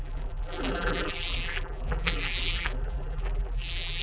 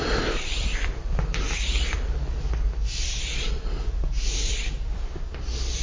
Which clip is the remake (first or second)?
first